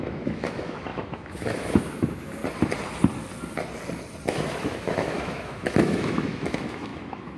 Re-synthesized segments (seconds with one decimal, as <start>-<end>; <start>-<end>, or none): 0.0-2.4; 4.3-7.4